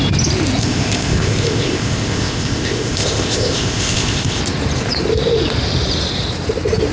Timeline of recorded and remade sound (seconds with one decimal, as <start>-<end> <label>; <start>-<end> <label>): 0.0-0.6 recorded; 0.6-4.4 remade; 4.4-6.9 recorded